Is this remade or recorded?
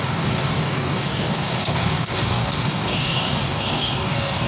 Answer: remade